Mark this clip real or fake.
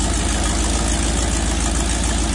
real